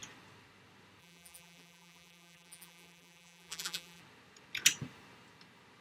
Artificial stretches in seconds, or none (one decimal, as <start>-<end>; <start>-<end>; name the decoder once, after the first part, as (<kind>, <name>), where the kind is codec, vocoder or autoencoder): 1.0-4.0 (vocoder, BigVGAN v2)